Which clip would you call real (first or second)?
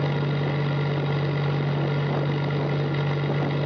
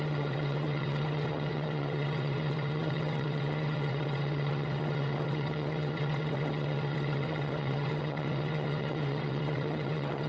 first